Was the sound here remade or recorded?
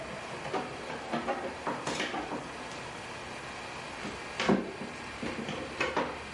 recorded